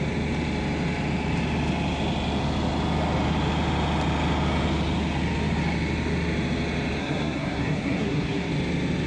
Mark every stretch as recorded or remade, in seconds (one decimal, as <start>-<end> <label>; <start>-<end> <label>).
0.0-7.0 recorded; 7.0-8.5 remade; 8.5-9.1 recorded